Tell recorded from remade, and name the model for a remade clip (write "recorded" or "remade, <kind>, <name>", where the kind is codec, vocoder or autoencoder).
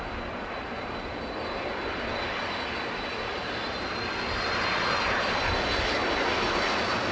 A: recorded